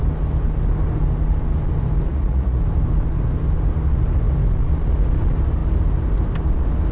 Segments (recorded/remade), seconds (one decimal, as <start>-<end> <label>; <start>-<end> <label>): 0.0-2.1 recorded; 2.1-2.6 remade; 2.6-6.9 recorded